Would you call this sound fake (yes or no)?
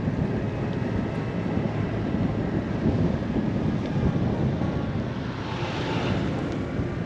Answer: no